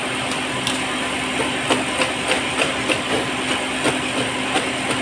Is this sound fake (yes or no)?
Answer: no